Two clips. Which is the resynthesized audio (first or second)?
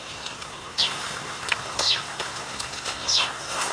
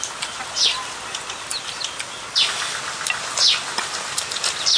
first